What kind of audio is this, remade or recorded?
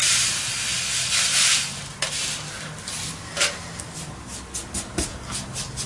recorded